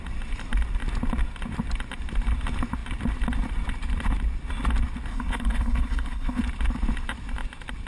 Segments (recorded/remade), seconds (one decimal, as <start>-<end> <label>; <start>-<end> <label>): 0.0-5.1 recorded; 5.1-6.4 remade; 6.4-7.9 recorded